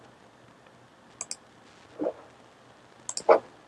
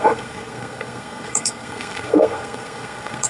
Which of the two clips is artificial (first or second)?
second